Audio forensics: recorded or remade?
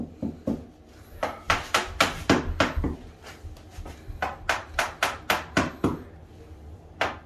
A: recorded